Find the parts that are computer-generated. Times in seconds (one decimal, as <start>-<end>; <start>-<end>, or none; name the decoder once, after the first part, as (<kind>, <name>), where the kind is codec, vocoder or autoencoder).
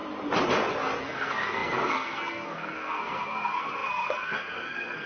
1.0-5.1 (codec, SNAC)